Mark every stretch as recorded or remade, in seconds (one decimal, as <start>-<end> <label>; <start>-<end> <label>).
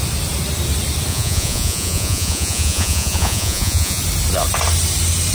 0.0-1.1 recorded; 1.1-4.0 remade; 4.0-5.3 recorded